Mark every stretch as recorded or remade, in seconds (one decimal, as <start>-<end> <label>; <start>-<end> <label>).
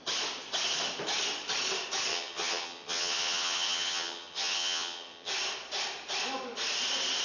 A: 0.0-2.1 recorded; 2.1-5.3 remade; 5.3-7.2 recorded